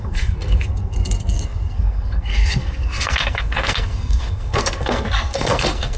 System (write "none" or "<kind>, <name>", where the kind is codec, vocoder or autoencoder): codec, SNAC